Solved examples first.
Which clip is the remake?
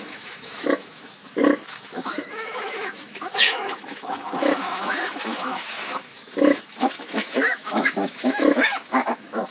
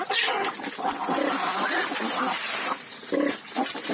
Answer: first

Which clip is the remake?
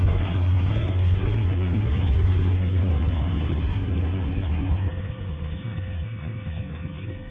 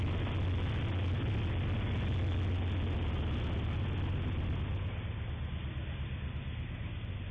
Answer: first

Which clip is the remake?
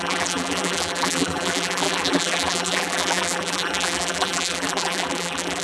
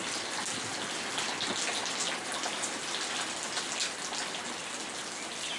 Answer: first